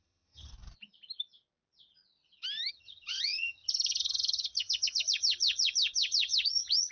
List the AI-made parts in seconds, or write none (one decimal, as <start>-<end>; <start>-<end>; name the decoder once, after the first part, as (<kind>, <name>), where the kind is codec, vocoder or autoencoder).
0.0-0.5 (vocoder, HiFi-GAN); 2.7-6.9